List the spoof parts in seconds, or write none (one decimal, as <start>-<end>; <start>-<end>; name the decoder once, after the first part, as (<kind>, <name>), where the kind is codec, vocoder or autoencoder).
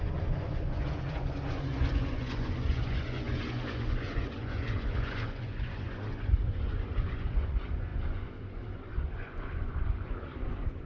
0.0-10.9 (vocoder, Vocos)